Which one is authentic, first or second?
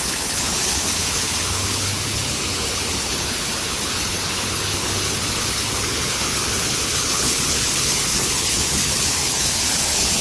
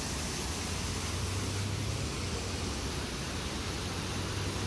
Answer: second